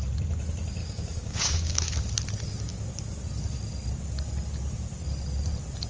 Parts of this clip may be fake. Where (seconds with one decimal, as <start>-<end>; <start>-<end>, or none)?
0.8-1.9